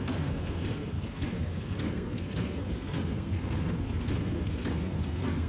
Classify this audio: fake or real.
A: fake